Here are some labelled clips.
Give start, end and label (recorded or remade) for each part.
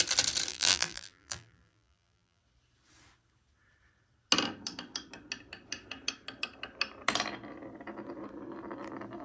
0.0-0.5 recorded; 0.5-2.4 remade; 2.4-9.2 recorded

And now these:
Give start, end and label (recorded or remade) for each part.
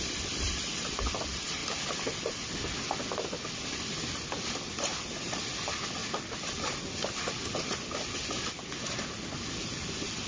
0.0-4.9 recorded; 4.9-5.4 remade; 5.4-10.3 recorded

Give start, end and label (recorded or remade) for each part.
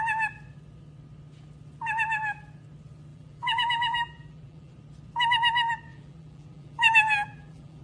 0.0-3.1 recorded; 3.1-4.7 remade; 4.7-5.9 recorded; 5.9-7.8 remade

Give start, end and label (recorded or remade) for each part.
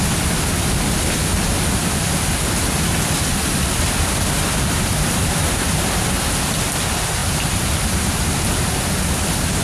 0.0-1.5 recorded; 1.5-6.6 remade; 6.6-7.2 recorded; 7.2-8.5 remade; 8.5-9.6 recorded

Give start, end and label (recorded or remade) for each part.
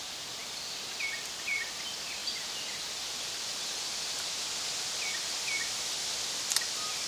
0.0-7.1 recorded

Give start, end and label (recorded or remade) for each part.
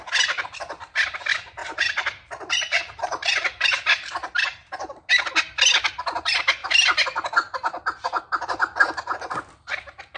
0.0-1.6 recorded; 1.6-5.1 remade; 5.1-10.2 recorded